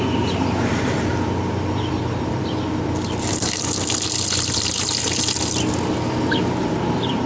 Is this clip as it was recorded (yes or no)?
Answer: no